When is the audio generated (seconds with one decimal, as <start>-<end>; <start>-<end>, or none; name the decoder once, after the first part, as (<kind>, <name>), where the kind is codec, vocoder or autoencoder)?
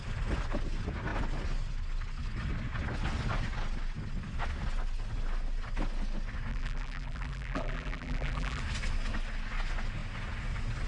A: 6.5-8.6 (vocoder, BigVGAN v2)